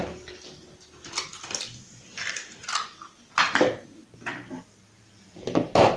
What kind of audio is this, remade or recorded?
recorded